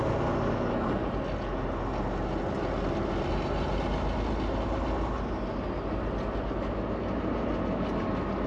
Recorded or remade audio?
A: recorded